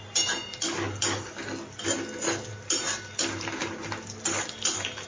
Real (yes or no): yes